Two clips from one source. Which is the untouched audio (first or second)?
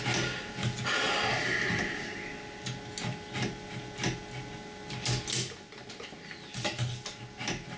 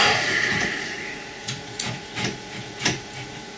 first